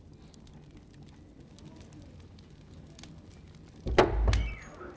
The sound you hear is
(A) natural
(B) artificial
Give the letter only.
A